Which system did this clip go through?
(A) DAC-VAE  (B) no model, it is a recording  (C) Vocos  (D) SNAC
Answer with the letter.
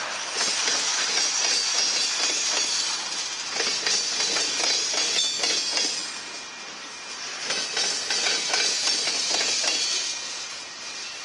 B